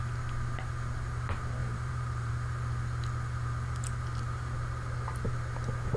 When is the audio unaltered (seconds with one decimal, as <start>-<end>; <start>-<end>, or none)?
0.0-1.6; 2.3-6.0